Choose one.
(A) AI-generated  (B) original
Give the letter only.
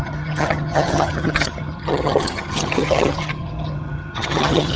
A